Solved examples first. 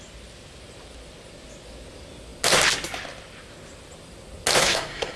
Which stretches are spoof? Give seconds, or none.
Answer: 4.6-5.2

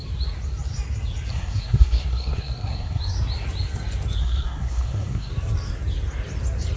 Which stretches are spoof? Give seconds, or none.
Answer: 1.3-3.0; 4.2-5.3

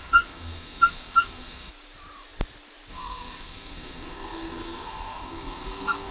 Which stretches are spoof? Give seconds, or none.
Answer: 0.0-1.7; 2.9-6.1

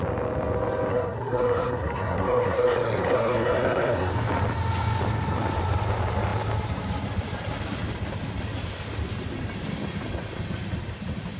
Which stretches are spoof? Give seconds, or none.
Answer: 0.9-4.1

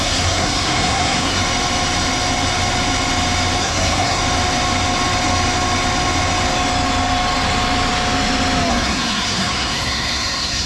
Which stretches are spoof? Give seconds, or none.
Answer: 0.0-1.4; 3.6-4.2; 8.7-10.7

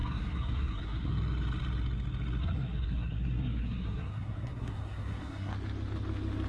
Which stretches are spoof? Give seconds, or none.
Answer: 0.0-1.1; 2.4-5.5

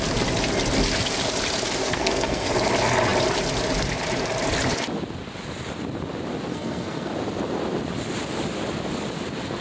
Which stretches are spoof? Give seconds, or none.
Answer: 1.8-2.5; 6.5-7.1

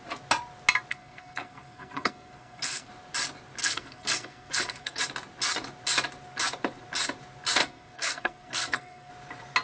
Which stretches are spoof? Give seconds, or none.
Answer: 0.9-2.9; 3.6-5.0; 7.6-9.1